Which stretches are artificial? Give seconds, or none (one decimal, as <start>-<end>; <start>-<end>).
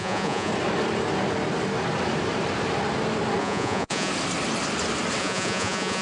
0.0-0.5; 3.4-4.1; 5.2-6.0